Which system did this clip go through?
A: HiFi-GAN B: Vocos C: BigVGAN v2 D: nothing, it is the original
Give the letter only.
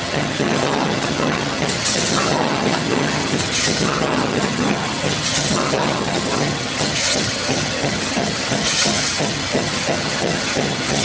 A